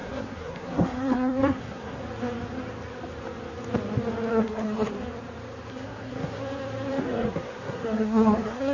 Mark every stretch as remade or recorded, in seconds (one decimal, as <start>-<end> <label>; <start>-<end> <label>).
0.0-2.0 remade; 2.0-4.3 recorded; 4.3-4.9 remade; 4.9-5.7 recorded; 5.7-6.4 remade; 6.4-7.0 recorded; 7.0-8.7 remade